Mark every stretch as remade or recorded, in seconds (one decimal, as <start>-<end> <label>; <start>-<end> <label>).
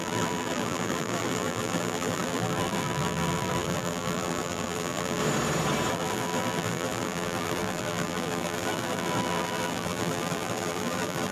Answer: 0.0-5.2 remade; 5.2-5.9 recorded; 5.9-11.3 remade